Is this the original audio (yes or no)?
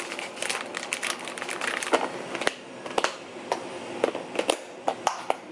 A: yes